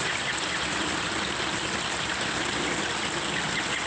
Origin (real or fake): real